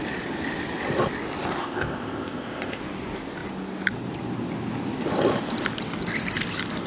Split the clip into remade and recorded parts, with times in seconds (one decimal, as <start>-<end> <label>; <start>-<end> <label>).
0.0-1.6 recorded; 1.6-2.8 remade; 2.8-6.9 recorded